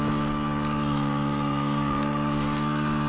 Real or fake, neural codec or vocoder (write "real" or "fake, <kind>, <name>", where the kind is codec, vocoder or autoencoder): fake, codec, DAC